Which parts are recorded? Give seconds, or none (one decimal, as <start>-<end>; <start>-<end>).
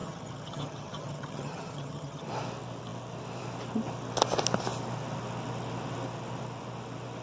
2.3-7.2